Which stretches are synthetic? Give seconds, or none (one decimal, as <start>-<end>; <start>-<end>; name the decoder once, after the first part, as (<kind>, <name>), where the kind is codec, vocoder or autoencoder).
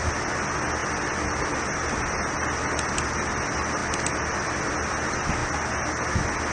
none